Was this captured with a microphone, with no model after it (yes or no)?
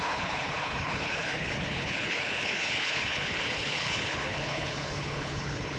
no